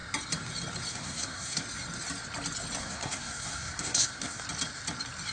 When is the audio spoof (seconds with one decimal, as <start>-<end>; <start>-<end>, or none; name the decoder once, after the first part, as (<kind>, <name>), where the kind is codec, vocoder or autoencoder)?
0.9-1.6 (codec, SNAC); 2.8-4.4